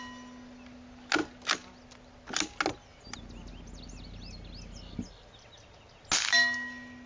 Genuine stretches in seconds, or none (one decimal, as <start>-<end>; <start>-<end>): 0.0-7.1